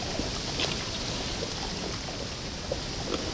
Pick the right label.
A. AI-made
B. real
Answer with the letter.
B